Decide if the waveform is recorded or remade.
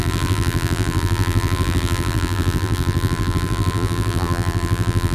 remade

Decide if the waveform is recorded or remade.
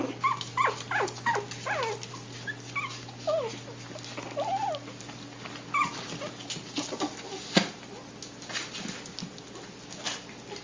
recorded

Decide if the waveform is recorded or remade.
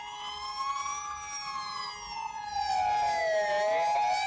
recorded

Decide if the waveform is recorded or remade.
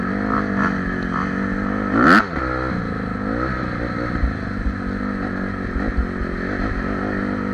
recorded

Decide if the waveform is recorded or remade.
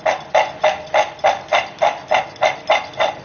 recorded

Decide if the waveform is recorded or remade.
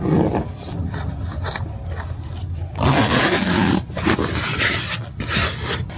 recorded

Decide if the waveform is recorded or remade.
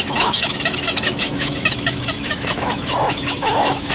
remade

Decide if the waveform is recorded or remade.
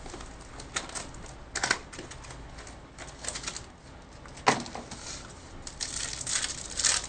recorded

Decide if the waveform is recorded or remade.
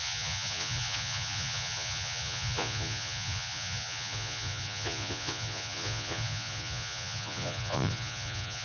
remade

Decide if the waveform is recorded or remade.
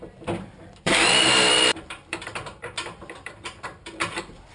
remade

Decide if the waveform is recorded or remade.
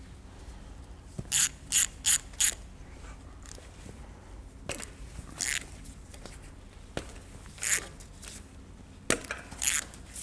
recorded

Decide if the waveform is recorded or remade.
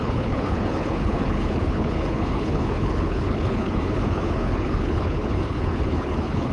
remade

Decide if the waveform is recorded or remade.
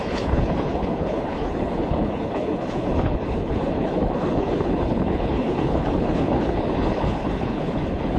remade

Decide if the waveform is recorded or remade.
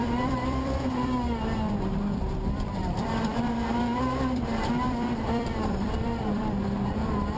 remade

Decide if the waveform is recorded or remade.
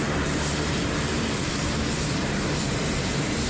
remade